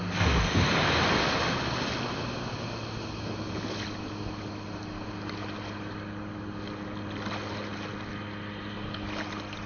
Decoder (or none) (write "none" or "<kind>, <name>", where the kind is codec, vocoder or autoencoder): none